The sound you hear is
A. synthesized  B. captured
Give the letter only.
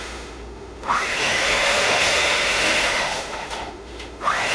A